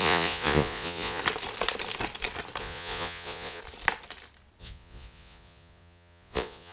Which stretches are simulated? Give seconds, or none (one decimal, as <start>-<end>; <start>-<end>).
0.0-1.2; 2.6-3.6; 4.6-6.7